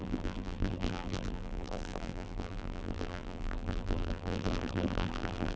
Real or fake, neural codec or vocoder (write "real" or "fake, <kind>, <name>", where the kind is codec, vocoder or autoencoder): fake, vocoder, BigVGAN v2